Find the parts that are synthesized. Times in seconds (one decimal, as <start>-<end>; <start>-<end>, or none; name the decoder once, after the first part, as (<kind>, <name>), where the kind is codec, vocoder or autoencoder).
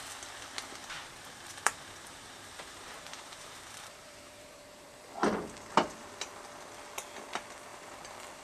0.8-5.1 (vocoder, BigVGAN v2)